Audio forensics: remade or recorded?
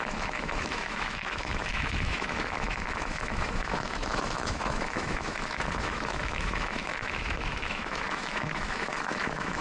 remade